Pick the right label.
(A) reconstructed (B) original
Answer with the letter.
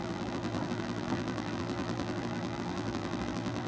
A